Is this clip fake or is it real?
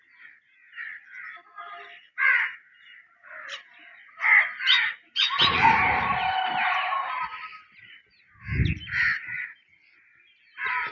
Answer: real